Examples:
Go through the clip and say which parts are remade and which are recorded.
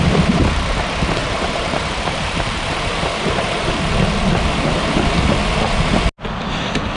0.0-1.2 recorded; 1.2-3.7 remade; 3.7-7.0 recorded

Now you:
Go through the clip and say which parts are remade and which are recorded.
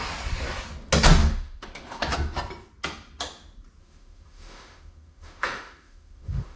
0.0-1.2 recorded; 1.2-2.0 remade; 2.0-3.8 recorded; 3.8-6.6 remade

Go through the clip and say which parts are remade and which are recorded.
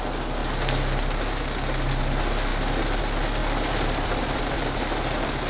0.0-3.4 recorded; 3.4-4.8 remade; 4.8-5.5 recorded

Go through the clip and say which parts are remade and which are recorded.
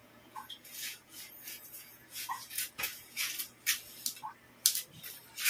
0.0-3.3 remade; 3.3-5.5 recorded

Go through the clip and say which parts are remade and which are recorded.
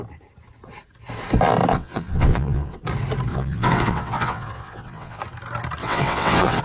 0.0-1.7 recorded; 1.7-2.8 remade; 2.8-3.3 recorded; 3.3-5.2 remade; 5.2-5.8 recorded; 5.8-6.6 remade